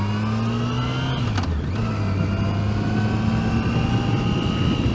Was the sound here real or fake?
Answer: real